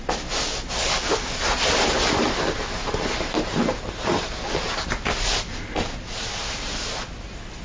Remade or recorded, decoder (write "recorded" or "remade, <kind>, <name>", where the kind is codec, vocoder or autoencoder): recorded